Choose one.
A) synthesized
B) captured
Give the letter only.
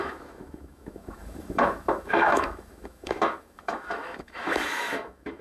A